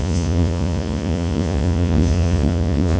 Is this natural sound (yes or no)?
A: no